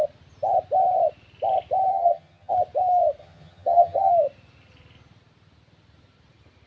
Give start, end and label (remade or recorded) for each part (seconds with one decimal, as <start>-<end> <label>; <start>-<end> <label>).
0.0-1.9 recorded; 1.9-2.5 remade; 2.5-3.2 recorded; 3.2-4.1 remade; 4.1-6.7 recorded